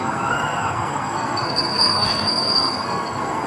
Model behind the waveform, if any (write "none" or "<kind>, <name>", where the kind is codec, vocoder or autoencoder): codec, SNAC